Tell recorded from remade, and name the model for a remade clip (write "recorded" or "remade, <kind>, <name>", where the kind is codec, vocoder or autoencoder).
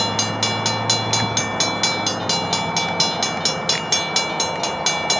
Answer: recorded